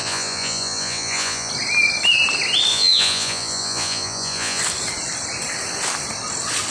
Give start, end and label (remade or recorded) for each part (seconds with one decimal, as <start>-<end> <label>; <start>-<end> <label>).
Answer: 0.0-1.5 remade; 1.5-2.7 recorded; 2.7-4.6 remade; 4.6-6.7 recorded